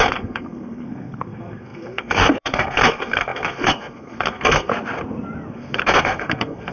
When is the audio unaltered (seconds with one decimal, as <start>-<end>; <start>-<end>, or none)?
4.7-5.5